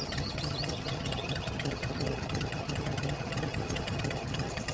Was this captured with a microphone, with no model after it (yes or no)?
no